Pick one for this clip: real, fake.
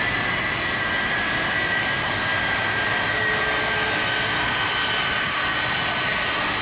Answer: real